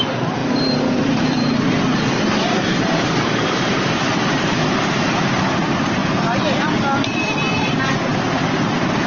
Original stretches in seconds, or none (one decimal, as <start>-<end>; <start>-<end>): 6.0-7.5